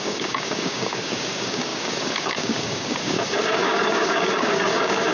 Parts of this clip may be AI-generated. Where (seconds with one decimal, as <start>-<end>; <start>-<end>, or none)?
0.0-5.1